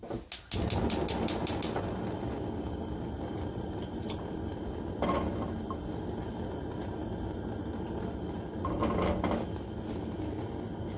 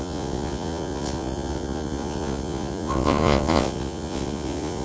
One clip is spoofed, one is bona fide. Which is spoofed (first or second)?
second